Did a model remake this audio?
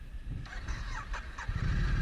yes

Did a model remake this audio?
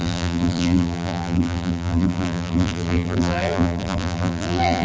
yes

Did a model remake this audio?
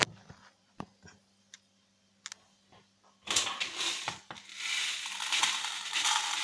no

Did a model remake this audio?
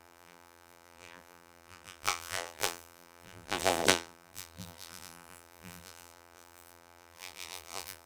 yes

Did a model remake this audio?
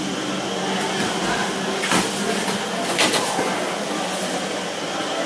no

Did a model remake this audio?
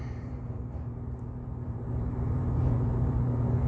yes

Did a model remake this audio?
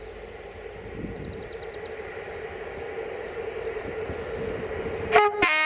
no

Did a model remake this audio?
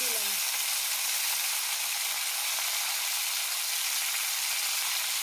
no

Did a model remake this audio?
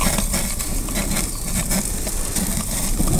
no